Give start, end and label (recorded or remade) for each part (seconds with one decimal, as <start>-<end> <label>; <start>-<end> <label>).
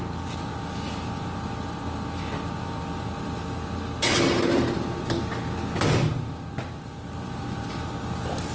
0.0-3.4 remade; 3.4-5.8 recorded; 5.8-8.5 remade